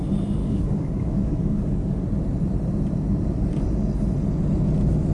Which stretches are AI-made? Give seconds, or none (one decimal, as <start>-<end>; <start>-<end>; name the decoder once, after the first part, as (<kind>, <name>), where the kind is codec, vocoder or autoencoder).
0.4-2.0 (codec, DAC)